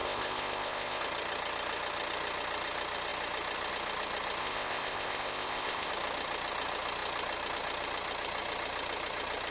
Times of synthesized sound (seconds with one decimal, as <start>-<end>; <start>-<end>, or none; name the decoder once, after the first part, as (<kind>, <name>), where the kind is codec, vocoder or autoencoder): 0.0-1.0 (codec, ZipCodec); 4.4-5.9